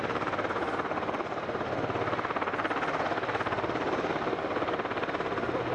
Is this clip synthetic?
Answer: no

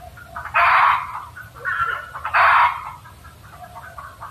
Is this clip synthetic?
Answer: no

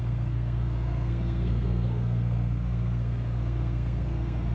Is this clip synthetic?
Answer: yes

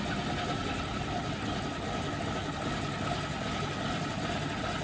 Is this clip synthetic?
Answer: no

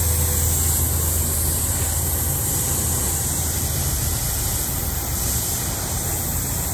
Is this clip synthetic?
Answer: no